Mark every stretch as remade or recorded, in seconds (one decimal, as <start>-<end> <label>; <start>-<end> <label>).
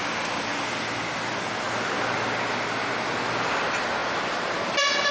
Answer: 0.0-5.1 recorded